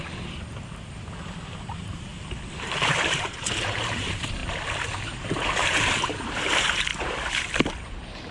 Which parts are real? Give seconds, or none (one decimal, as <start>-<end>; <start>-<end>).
2.1-2.7; 4.4-5.1; 6.9-7.8